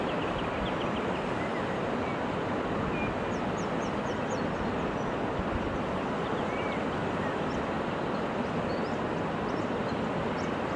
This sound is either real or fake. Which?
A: real